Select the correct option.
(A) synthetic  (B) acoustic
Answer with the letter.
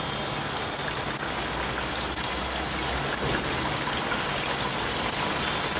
B